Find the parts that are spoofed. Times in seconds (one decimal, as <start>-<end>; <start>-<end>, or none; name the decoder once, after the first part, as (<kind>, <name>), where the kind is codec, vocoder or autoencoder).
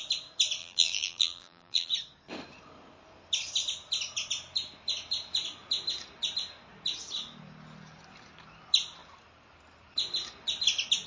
0.6-1.9 (vocoder, BigVGAN v2)